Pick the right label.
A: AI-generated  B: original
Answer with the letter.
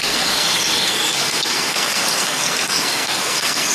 A